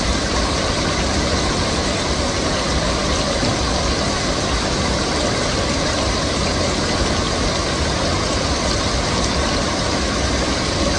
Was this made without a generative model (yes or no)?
yes